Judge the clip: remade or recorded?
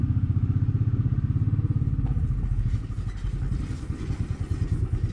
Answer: recorded